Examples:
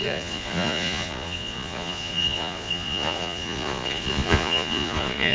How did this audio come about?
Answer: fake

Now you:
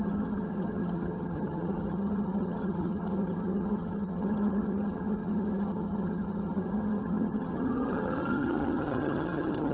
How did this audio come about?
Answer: fake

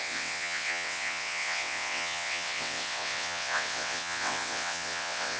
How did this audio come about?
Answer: fake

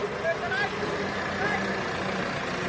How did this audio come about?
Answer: real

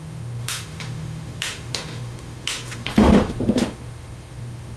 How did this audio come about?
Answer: fake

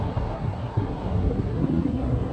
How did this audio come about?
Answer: fake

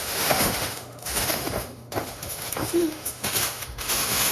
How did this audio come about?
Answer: fake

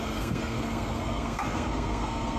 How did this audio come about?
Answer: fake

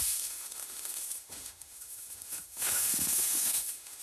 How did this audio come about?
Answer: fake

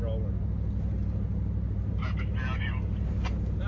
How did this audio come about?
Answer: real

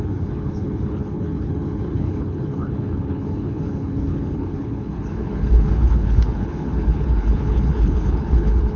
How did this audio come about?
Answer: fake